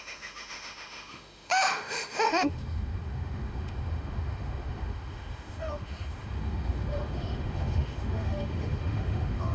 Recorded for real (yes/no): no